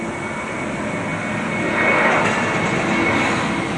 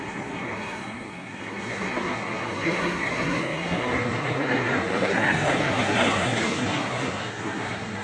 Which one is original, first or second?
first